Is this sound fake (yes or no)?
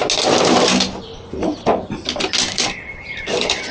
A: no